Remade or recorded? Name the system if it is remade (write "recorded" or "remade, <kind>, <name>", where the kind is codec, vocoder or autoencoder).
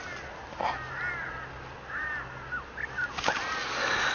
recorded